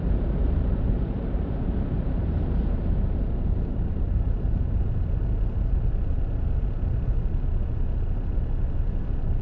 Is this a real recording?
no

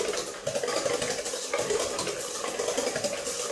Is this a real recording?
yes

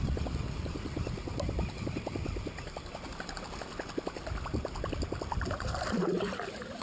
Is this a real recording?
yes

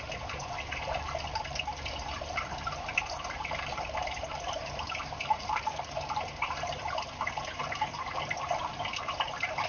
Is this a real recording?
no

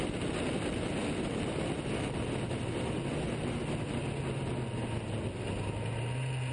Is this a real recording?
yes